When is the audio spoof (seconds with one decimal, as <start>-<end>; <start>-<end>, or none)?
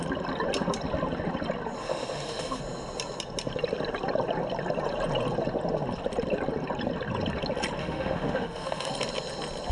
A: 1.8-2.6; 7.8-8.9